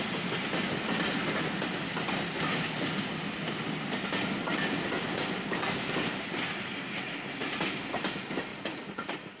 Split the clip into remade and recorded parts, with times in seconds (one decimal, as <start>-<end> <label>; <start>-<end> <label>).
0.0-8.5 recorded; 8.5-9.4 remade

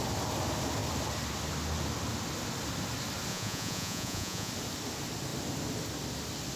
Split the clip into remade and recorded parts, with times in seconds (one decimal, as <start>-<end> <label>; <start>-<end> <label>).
0.0-3.3 recorded; 3.3-4.5 remade; 4.5-6.6 recorded

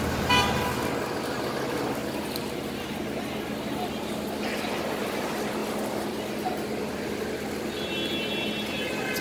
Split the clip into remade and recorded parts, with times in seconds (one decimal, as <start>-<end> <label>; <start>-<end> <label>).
0.0-9.2 recorded

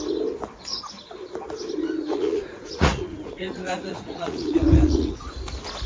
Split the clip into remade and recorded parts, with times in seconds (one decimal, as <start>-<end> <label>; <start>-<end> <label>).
0.0-1.8 recorded; 1.8-5.3 remade; 5.3-5.9 recorded

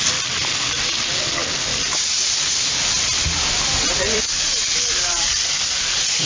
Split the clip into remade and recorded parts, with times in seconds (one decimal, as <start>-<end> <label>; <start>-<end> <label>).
0.0-6.3 remade